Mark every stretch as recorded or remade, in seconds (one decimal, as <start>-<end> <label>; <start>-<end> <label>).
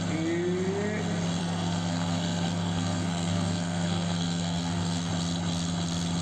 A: 0.0-1.4 recorded; 1.4-5.1 remade; 5.1-6.2 recorded